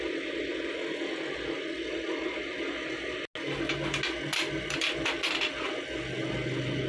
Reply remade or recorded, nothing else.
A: recorded